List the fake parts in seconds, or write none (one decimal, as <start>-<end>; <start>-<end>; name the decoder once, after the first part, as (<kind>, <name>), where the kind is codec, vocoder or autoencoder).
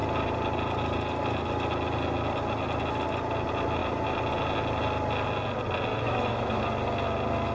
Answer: 5.9-6.6 (autoencoder, DAC-VAE)